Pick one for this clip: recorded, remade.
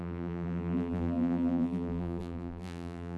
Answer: remade